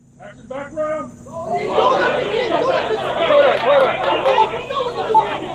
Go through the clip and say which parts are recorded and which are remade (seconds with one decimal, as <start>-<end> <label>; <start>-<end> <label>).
0.0-1.4 recorded; 1.4-3.3 remade; 3.3-5.5 recorded